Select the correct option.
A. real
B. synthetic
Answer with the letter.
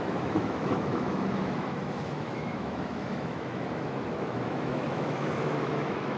B